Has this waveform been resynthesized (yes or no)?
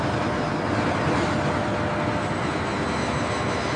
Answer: no